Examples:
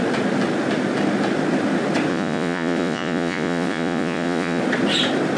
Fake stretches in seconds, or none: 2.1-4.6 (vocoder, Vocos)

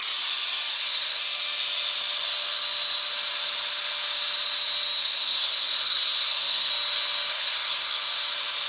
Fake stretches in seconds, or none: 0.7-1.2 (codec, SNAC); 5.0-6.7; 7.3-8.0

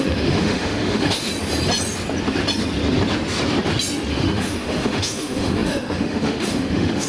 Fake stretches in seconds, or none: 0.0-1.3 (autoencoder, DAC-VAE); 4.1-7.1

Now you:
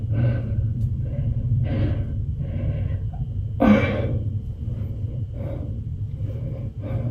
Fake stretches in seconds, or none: 0.0-1.6 (vocoder, BigVGAN v2); 2.2-3.0; 3.9-6.2